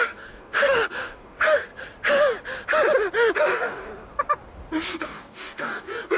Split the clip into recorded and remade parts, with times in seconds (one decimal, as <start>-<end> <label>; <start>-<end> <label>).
0.0-1.7 remade; 1.7-3.3 recorded; 3.3-3.9 remade; 3.9-4.9 recorded; 4.9-6.2 remade